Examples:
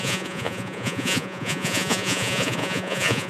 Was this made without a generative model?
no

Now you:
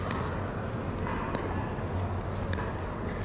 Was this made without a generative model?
yes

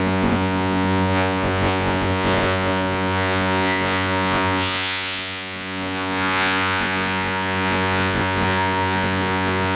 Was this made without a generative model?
no